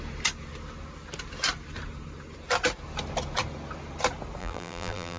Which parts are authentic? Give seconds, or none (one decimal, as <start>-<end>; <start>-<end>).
0.0-4.4